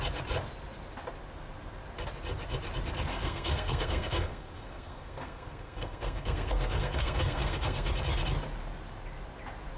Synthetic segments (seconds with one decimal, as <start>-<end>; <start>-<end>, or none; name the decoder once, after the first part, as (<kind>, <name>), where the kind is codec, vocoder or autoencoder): 3.1-7.9 (codec, SNAC)